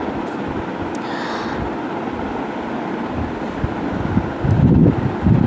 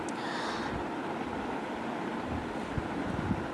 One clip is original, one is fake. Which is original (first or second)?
first